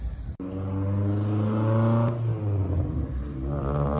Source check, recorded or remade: recorded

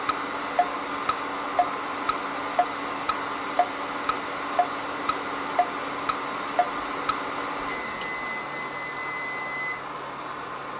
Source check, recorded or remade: recorded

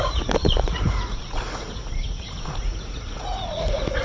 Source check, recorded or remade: remade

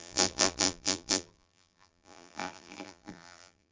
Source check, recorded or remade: remade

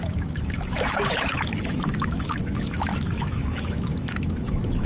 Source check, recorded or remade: remade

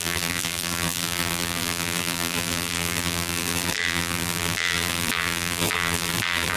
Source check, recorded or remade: remade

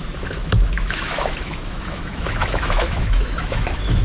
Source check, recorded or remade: remade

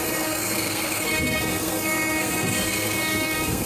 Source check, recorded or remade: remade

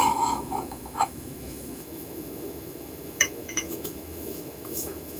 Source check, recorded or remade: remade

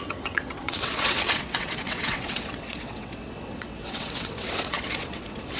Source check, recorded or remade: remade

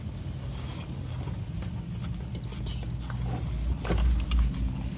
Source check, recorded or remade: recorded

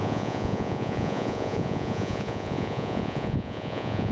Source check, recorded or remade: remade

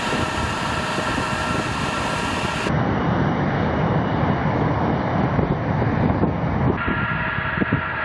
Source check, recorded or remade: recorded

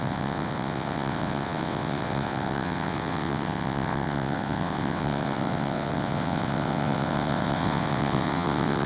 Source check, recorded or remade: remade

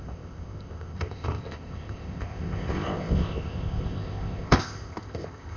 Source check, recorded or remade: remade